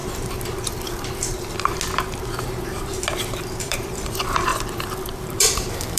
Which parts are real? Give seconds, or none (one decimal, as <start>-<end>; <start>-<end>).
0.0-2.4; 2.9-3.6; 4.5-5.2